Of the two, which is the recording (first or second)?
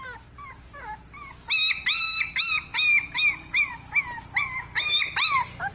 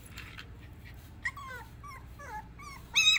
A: first